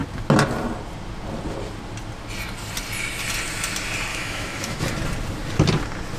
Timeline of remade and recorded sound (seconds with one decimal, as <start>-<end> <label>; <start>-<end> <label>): 0.0-4.1 recorded; 4.1-4.8 remade; 4.8-6.2 recorded